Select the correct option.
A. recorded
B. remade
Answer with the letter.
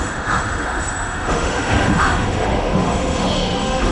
B